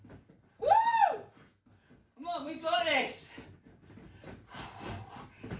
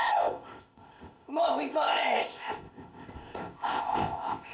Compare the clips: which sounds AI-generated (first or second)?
second